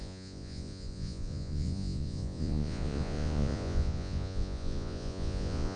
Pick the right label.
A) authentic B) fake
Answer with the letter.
B